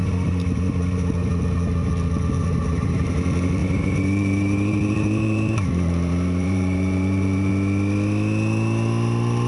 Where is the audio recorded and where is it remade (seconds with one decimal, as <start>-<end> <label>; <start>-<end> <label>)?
0.0-1.4 remade; 1.4-2.4 recorded; 2.4-3.1 remade; 3.1-3.6 recorded; 3.6-7.5 remade; 7.5-9.5 recorded